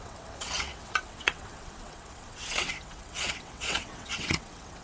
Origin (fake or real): fake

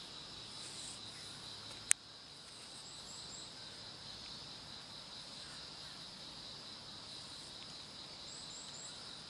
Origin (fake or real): real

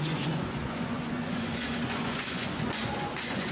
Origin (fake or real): fake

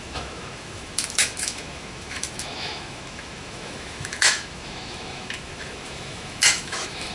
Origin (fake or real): fake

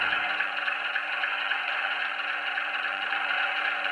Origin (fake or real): fake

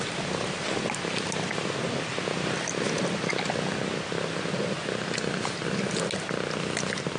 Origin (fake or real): real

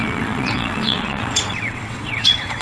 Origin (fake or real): fake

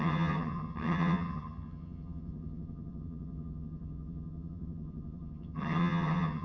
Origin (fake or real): fake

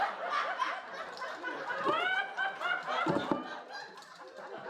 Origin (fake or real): real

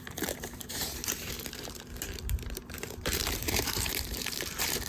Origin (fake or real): fake